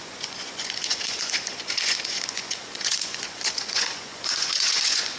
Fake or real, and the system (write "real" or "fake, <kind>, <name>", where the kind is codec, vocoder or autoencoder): fake, vocoder, Vocos